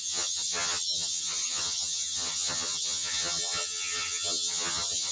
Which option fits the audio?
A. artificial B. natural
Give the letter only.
A